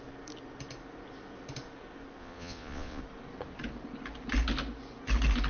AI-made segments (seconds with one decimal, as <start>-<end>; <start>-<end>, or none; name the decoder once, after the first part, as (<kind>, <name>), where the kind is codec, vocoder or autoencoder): 2.2-3.0 (vocoder, Vocos)